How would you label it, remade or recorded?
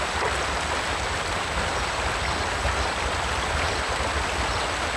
recorded